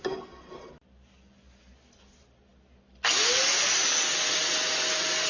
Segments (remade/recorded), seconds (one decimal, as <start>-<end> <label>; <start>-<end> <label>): 0.0-5.3 recorded